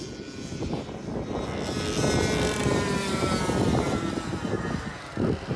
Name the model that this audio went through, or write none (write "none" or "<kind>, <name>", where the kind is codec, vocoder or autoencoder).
none